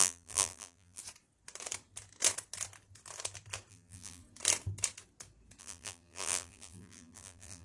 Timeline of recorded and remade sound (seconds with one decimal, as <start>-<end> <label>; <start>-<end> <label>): 0.0-1.0 remade; 1.0-3.7 recorded; 3.7-4.2 remade; 4.2-5.6 recorded; 5.6-7.6 remade